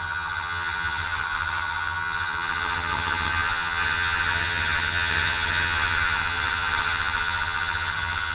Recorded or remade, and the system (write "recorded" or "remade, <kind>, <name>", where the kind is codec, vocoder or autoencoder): remade, vocoder, HiFi-GAN